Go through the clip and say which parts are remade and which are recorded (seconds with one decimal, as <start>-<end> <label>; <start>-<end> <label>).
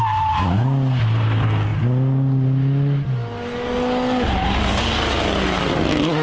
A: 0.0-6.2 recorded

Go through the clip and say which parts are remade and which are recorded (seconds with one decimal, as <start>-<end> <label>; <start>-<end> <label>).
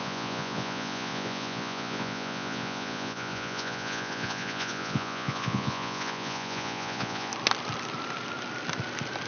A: 0.0-7.3 remade; 7.3-9.3 recorded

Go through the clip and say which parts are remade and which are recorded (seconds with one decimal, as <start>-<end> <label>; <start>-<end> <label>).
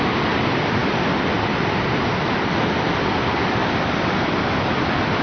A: 0.0-5.2 recorded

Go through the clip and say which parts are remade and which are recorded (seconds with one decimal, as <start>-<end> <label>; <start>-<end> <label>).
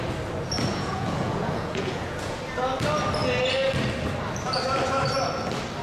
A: 0.0-0.7 recorded; 0.7-2.4 remade; 2.4-5.8 recorded